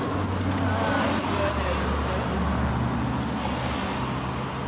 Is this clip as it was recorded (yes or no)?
yes